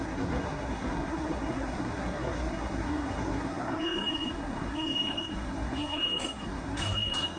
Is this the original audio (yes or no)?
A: no